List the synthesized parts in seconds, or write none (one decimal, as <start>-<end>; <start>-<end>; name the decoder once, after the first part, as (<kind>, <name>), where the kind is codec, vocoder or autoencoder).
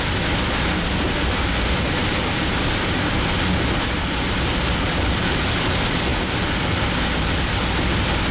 none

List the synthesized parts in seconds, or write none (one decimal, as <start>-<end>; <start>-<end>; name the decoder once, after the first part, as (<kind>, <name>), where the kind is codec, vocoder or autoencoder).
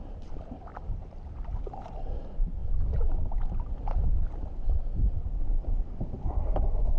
0.7-2.0 (vocoder, BigVGAN v2)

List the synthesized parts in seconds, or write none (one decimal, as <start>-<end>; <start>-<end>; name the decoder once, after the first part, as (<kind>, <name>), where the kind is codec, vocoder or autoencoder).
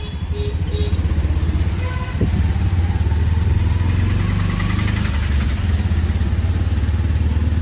none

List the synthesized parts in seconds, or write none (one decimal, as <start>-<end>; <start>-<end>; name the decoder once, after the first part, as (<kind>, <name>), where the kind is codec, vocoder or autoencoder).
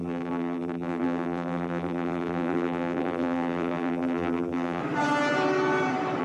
0.0-4.8 (vocoder, BigVGAN v2)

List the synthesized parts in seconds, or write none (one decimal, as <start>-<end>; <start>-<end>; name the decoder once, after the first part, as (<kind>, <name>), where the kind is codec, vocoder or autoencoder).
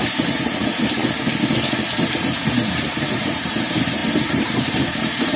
0.0-1.0 (vocoder, BigVGAN v2); 2.5-5.4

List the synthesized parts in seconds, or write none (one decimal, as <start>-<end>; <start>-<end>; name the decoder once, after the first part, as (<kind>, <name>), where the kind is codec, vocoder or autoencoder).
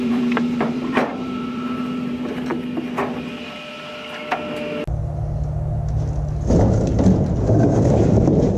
0.0-2.5 (vocoder, BigVGAN v2); 7.6-8.6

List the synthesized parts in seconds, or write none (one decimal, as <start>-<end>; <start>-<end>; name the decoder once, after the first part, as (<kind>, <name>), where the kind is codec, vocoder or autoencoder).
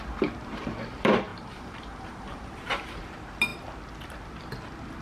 1.3-3.0 (vocoder, BigVGAN v2)